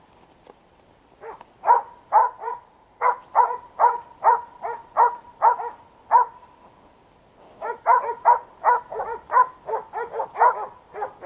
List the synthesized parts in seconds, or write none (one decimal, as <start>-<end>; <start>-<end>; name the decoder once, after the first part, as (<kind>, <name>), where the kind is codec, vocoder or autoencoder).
2.2-3.2 (vocoder, Vocos)

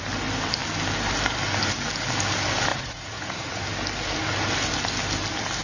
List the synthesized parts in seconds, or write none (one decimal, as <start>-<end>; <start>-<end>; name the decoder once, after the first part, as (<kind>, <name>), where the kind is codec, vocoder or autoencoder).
2.7-3.6 (vocoder, Vocos)

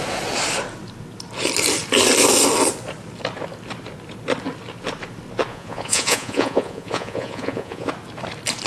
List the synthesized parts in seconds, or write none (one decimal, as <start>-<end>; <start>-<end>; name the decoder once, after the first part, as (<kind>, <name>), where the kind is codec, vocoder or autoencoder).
5.5-7.9 (vocoder, Vocos)